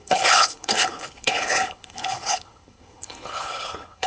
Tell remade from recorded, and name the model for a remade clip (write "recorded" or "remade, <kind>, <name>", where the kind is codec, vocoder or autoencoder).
remade, codec, HILCodec